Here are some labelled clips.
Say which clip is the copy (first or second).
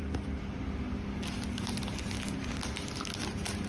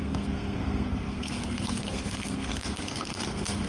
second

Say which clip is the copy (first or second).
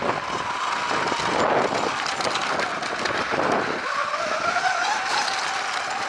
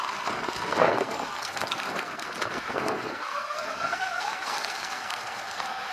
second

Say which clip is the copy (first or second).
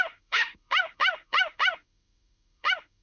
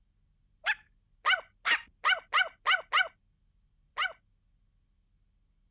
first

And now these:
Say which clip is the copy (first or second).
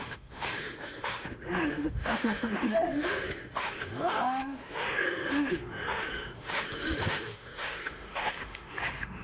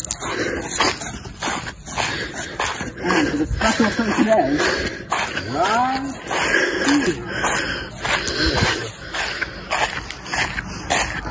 first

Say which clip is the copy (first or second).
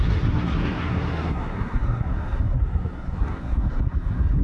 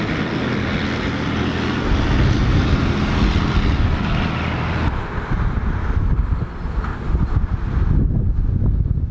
first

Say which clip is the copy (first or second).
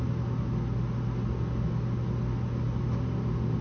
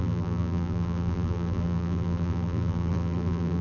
second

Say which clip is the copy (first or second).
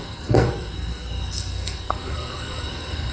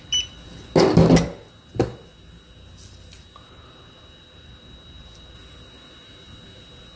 first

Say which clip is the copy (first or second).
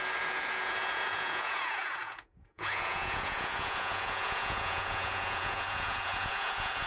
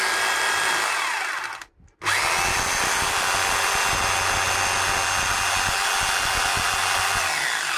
first